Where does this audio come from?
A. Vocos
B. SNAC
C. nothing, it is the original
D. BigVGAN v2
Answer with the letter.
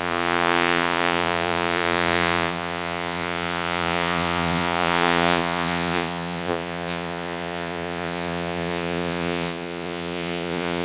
A